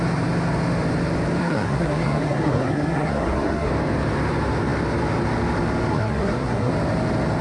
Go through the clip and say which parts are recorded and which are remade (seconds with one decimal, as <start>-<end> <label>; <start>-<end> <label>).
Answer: 0.0-1.4 recorded; 1.4-3.7 remade; 3.7-5.9 recorded; 5.9-6.7 remade; 6.7-7.4 recorded